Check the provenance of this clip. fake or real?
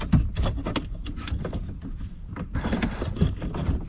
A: real